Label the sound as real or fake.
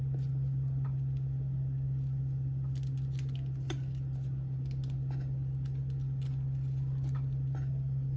real